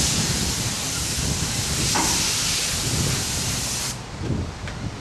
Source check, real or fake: fake